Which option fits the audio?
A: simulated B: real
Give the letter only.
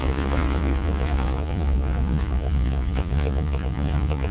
A